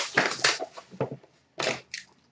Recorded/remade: recorded